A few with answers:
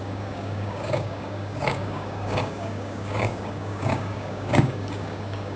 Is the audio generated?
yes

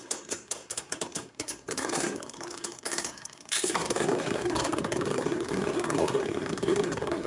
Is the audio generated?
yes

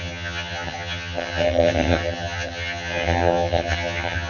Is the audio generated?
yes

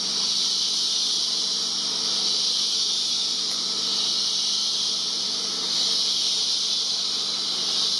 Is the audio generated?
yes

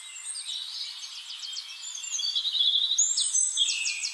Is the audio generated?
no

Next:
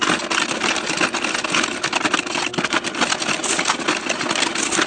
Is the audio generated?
no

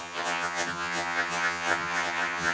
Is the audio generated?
yes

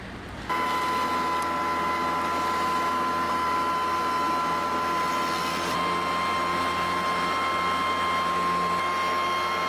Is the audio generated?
no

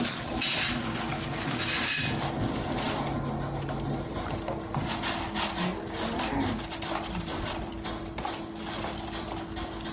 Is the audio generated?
no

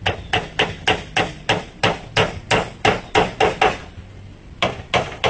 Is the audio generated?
no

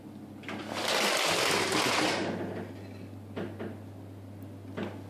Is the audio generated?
no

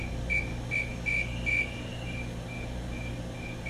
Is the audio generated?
no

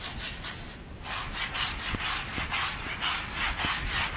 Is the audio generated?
no